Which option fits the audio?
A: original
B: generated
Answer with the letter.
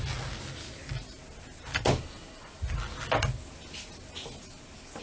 A